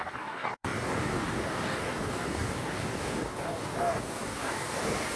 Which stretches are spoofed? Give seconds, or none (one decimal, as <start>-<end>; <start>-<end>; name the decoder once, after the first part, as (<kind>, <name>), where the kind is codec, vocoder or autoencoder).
0.0-5.2 (codec, DAC)